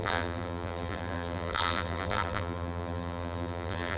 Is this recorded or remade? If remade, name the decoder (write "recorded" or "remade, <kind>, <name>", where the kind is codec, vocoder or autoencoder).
remade, vocoder, BigVGAN v2